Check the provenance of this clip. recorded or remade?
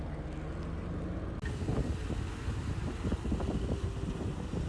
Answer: recorded